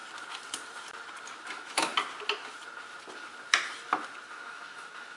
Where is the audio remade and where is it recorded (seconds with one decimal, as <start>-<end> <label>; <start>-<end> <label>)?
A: 0.0-1.5 recorded; 1.5-1.9 remade; 1.9-4.3 recorded; 4.3-5.2 remade